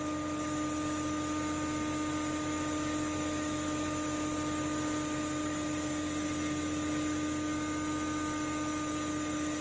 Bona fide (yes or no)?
yes